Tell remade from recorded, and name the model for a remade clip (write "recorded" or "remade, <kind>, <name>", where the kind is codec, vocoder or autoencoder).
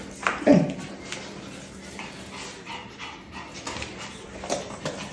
recorded